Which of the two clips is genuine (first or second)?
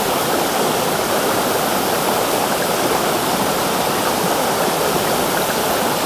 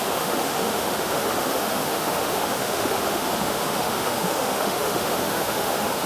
first